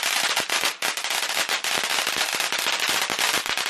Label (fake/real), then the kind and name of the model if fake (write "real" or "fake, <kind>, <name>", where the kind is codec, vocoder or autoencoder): real